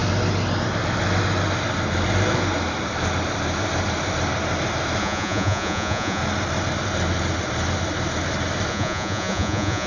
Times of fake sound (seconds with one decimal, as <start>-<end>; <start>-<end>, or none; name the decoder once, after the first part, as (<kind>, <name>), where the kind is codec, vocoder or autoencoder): 5.0-6.2 (vocoder, Vocos); 8.7-9.9